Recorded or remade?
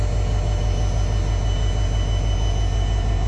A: recorded